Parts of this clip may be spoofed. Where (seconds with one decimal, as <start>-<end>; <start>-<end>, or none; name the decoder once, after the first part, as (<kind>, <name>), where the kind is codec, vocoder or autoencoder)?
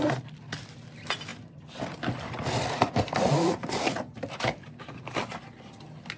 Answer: none